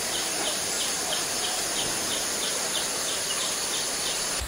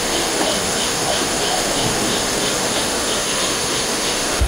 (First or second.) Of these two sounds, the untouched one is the first